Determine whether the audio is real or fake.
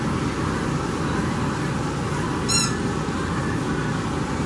real